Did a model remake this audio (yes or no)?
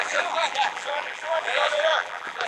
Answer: yes